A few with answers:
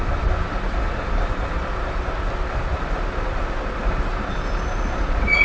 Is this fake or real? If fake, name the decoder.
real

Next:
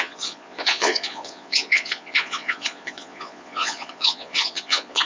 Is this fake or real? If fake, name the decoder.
fake, vocoder, Vocos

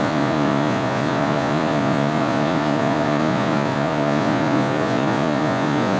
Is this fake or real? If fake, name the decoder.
fake, vocoder, Vocos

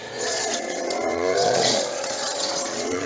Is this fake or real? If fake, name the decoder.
fake, vocoder, Vocos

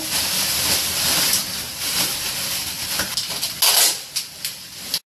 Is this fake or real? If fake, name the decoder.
real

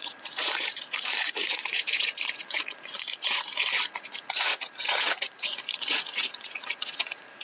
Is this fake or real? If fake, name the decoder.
fake, vocoder, Vocos